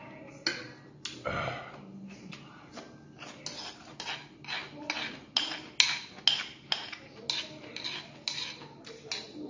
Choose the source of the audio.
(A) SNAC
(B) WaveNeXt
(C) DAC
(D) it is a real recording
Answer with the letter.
D